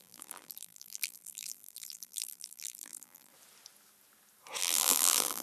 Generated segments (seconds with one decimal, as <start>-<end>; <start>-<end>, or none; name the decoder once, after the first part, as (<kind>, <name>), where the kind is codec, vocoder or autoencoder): 0.0-3.3 (vocoder, BigVGAN v2); 4.6-5.4